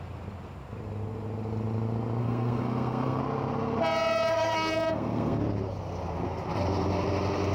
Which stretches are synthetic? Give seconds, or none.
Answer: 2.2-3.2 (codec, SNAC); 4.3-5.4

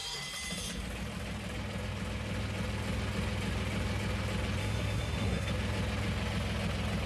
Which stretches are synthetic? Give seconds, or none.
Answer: 4.6-5.5 (codec, SNAC)

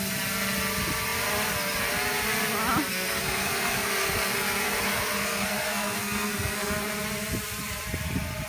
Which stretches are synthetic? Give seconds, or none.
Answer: 2.9-6.9 (codec, SNAC)

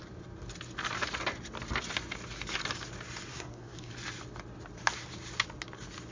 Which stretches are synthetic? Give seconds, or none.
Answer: 3.3-3.9 (codec, SNAC)

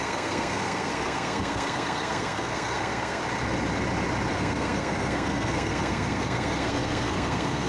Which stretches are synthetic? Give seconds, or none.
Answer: 0.0-3.2 (codec, SNAC); 4.3-7.7